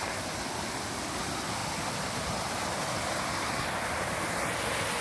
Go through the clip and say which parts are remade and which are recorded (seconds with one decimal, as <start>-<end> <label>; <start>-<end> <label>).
0.0-5.0 recorded